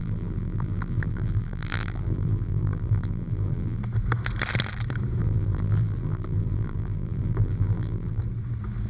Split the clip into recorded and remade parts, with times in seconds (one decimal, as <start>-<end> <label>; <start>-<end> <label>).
0.0-3.8 remade; 3.8-5.2 recorded; 5.2-8.2 remade; 8.2-8.9 recorded

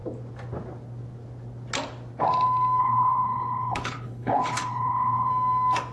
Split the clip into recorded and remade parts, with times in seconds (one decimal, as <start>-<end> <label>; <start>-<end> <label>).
0.0-2.8 recorded; 2.8-5.3 remade; 5.3-5.9 recorded

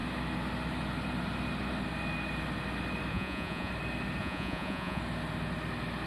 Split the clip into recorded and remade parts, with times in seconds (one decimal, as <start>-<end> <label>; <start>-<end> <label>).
0.0-3.1 recorded; 3.1-3.7 remade; 3.7-4.2 recorded; 4.2-5.0 remade; 5.0-6.1 recorded